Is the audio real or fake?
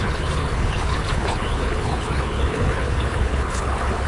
fake